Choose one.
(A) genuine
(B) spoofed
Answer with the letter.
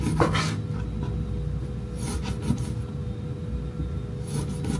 A